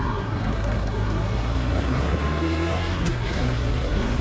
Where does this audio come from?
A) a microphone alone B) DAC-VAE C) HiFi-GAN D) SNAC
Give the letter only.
D